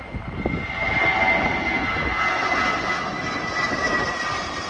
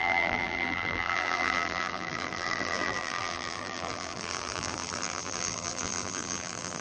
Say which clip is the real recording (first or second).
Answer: first